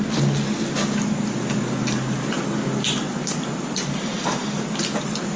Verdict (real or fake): real